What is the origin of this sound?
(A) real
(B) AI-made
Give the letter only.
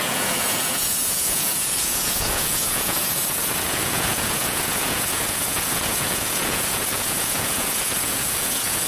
B